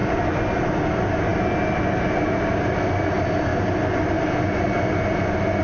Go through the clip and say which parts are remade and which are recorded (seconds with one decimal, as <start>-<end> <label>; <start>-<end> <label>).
0.0-5.6 recorded